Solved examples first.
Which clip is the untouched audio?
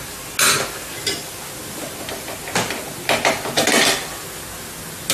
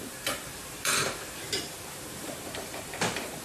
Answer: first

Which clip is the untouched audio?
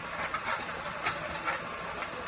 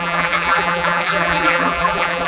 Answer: first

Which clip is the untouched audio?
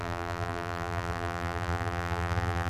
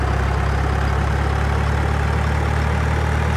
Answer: second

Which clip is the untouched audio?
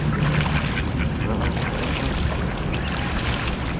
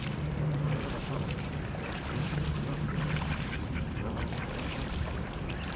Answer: first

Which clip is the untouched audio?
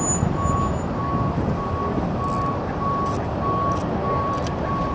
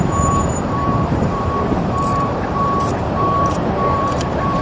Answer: first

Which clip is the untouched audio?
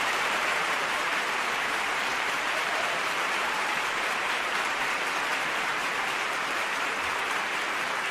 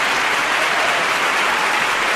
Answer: second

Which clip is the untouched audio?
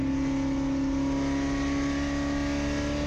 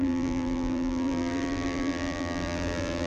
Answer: first